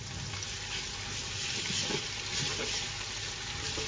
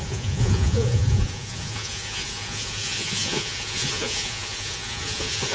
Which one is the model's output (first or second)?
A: second